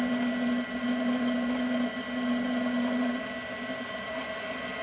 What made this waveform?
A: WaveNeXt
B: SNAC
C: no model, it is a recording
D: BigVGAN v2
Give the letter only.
C